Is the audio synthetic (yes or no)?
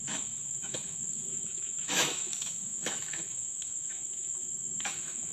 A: yes